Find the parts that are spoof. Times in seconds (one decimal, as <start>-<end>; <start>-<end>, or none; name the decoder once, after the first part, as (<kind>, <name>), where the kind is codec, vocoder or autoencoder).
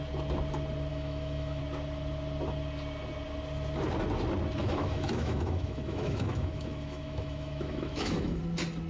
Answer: 0.9-1.6 (autoencoder, DAC-VAE); 4.6-8.4